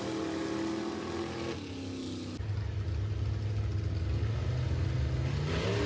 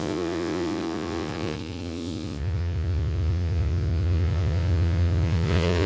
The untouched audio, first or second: first